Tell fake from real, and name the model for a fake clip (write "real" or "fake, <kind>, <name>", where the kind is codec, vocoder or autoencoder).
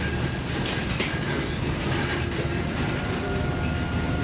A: fake, vocoder, BigVGAN v2